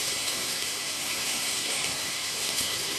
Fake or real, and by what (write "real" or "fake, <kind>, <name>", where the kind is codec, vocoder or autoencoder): fake, codec, SNAC